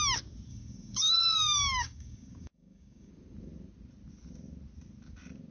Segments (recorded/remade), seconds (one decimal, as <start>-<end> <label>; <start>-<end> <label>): 0.0-0.5 recorded; 0.5-3.1 remade; 3.1-5.5 recorded